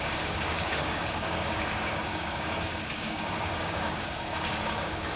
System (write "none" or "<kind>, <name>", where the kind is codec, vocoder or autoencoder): codec, DAC